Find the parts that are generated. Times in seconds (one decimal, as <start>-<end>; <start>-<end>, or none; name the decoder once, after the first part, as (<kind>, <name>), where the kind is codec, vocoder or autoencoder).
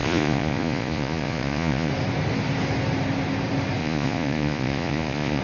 0.0-1.9 (vocoder, Vocos); 3.8-5.4